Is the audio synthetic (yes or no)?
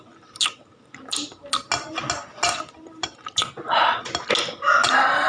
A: no